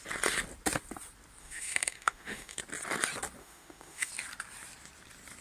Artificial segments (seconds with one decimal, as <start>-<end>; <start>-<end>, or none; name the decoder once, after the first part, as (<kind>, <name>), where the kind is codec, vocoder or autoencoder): 1.4-2.6 (autoencoder, DAC-VAE); 3.4-4.1